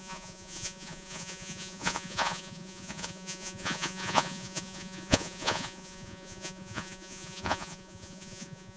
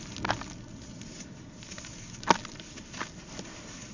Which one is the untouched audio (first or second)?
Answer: second